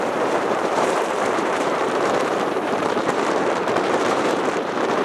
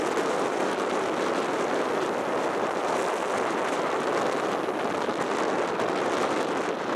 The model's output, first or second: first